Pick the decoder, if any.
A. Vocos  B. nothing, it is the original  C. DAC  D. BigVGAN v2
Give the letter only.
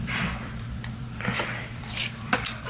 D